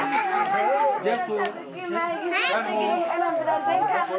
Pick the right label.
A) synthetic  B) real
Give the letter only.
B